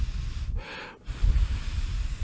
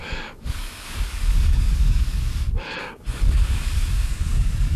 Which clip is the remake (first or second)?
second